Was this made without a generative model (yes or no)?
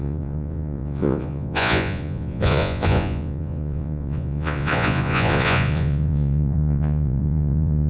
no